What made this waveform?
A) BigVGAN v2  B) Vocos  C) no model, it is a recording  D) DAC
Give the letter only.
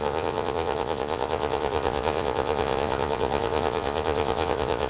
B